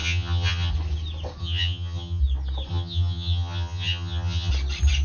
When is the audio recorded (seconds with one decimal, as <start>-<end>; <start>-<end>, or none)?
0.7-1.4; 2.2-2.7; 4.5-5.0